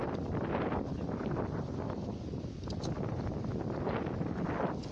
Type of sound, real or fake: real